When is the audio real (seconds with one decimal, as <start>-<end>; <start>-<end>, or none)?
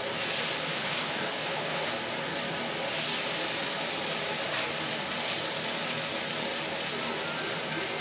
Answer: 0.0-0.7; 1.9-8.0